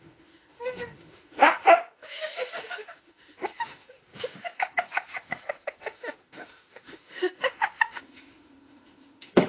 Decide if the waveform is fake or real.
fake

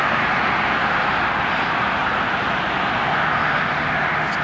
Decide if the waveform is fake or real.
real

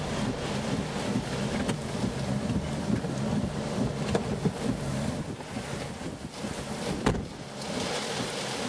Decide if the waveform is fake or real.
real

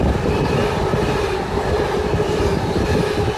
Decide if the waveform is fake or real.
real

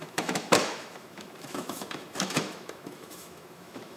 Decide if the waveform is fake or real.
fake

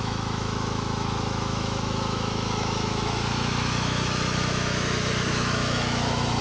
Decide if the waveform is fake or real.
fake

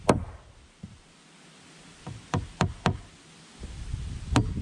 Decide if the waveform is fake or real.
real